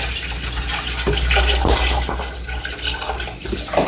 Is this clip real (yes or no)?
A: yes